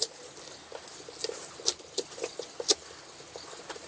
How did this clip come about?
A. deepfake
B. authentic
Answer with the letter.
B